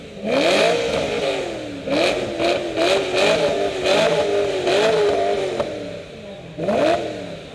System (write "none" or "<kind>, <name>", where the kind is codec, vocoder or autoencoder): none